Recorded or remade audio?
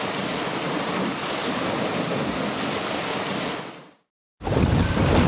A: recorded